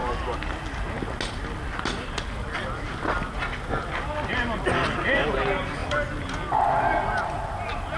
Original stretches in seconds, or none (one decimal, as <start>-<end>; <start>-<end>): 0.0-8.0